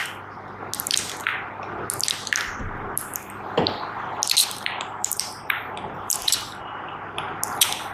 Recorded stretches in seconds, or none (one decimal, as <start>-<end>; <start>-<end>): 0.0-4.4; 6.4-7.9